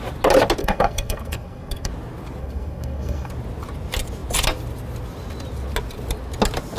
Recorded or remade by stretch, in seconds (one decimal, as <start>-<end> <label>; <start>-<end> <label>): 0.0-0.6 recorded; 0.6-1.9 remade; 1.9-2.4 recorded; 2.4-3.3 remade; 3.3-6.8 recorded